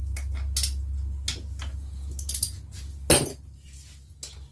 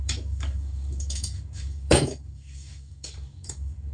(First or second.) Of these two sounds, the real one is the first